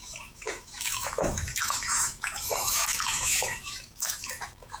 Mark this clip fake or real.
fake